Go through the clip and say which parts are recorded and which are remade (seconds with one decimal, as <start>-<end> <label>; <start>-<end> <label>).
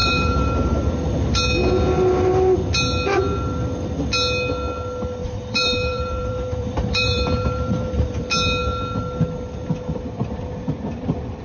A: 0.0-0.8 remade; 0.8-5.2 recorded; 5.2-8.2 remade; 8.2-11.4 recorded